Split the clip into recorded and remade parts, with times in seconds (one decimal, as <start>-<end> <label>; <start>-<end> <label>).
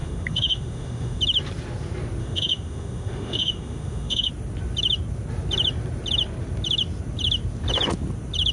0.0-1.2 remade; 1.2-2.2 recorded; 2.2-4.3 remade; 4.3-8.5 recorded